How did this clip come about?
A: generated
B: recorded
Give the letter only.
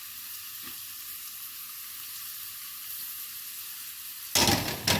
B